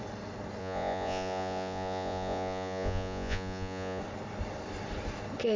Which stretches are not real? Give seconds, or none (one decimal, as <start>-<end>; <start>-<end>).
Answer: 0.6-4.0